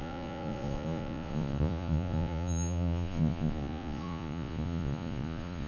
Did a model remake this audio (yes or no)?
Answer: yes